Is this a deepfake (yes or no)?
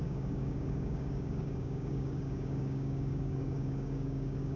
yes